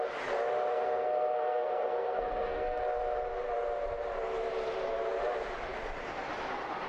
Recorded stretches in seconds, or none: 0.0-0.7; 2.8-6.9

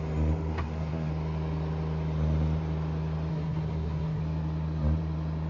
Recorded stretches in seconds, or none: 0.0-0.5; 1.1-3.3; 4.2-5.5

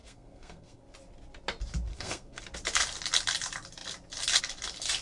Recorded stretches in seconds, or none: 0.8-1.9; 2.4-5.0

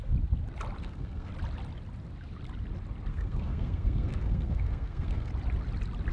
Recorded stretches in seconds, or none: 0.0-0.8; 1.3-3.1; 5.3-6.1

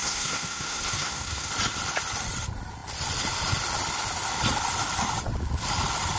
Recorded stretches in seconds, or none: 1.5-6.2

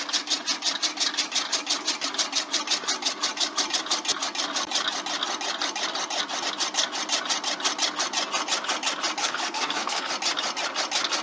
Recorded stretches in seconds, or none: 0.0-9.2; 10.1-11.2

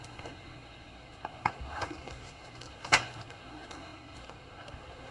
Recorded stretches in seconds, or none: none